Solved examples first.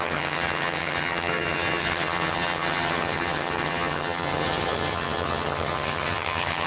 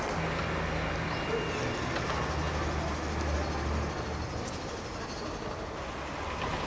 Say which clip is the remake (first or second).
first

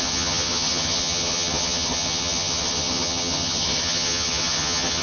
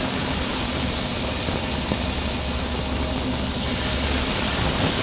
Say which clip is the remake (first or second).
first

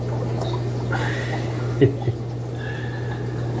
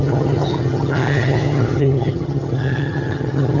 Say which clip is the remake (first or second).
second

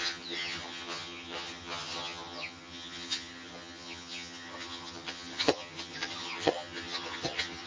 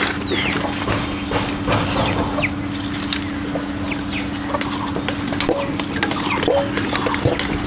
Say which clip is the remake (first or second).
first